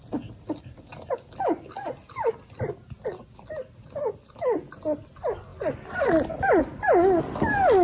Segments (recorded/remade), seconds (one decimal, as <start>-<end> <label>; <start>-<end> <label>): 0.0-7.8 recorded